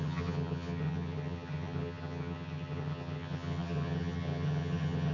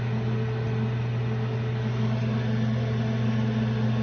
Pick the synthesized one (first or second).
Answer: first